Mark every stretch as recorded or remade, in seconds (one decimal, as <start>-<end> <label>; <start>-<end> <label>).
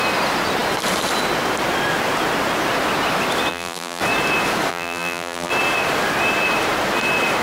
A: 0.0-3.5 recorded; 3.5-4.0 remade; 4.0-4.7 recorded; 4.7-5.5 remade; 5.5-7.4 recorded